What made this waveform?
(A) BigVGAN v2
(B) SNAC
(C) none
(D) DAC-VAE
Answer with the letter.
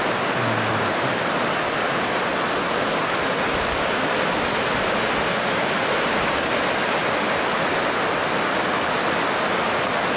C